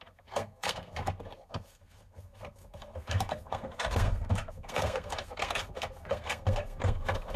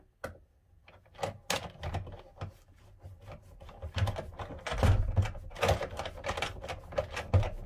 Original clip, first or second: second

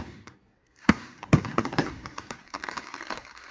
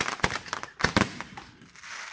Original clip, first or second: second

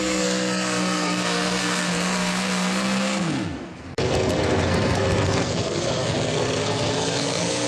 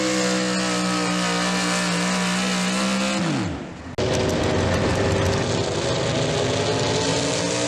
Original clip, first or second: second